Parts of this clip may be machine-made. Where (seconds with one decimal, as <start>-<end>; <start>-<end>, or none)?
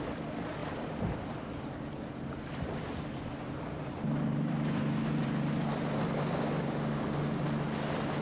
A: 0.6-5.5